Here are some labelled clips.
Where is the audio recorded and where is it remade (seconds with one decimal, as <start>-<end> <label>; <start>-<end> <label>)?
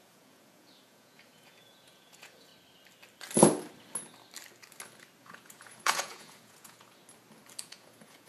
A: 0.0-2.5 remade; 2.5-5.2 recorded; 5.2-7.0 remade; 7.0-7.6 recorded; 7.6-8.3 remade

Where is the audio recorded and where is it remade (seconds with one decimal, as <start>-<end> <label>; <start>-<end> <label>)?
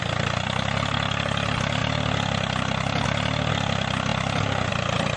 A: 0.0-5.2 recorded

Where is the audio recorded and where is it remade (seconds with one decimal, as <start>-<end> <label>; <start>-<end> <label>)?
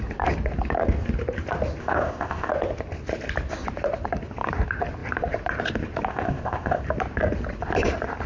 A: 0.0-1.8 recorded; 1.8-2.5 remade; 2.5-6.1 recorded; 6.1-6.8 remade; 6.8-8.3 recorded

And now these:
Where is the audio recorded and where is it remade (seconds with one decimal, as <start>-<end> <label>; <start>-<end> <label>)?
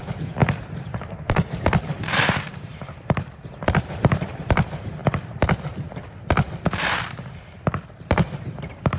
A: 0.0-5.0 remade; 5.0-7.9 recorded; 7.9-9.0 remade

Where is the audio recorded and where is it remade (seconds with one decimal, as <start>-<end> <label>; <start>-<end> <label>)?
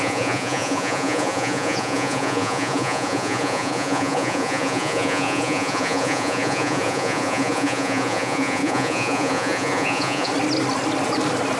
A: 0.0-10.3 remade; 10.3-11.6 recorded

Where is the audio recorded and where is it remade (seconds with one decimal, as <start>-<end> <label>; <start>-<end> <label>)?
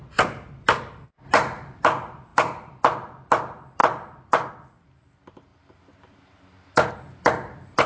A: 0.0-0.5 remade; 0.5-7.9 recorded